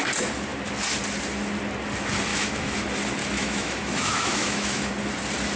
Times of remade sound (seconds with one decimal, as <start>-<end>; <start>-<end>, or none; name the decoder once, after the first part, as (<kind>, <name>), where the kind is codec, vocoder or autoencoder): 2.3-2.8 (autoencoder, DAC-VAE); 3.2-4.9

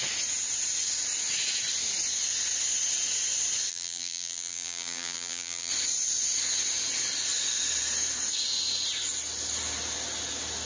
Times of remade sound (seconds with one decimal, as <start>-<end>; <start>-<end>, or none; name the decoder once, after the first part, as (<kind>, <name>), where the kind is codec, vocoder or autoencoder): 3.7-5.7 (vocoder, BigVGAN v2)

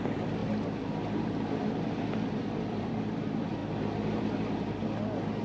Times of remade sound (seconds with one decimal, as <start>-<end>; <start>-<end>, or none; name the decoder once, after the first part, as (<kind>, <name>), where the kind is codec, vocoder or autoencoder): 0.0-0.4 (vocoder, BigVGAN v2); 2.3-3.6; 4.2-4.8

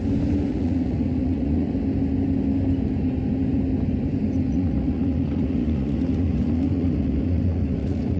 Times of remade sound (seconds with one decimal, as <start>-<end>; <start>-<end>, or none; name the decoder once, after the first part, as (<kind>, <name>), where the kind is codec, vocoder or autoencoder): 0.5-1.7 (vocoder, Vocos); 4.5-8.2

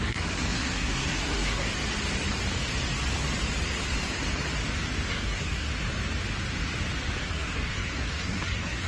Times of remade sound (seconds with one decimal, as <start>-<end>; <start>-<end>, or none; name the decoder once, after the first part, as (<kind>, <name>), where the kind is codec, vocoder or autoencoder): 0.0-1.7 (codec, SNAC); 5.1-5.7; 7.3-8.9